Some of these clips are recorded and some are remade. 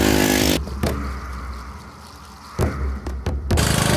recorded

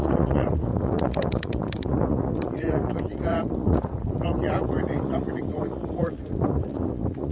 remade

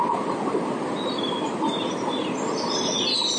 recorded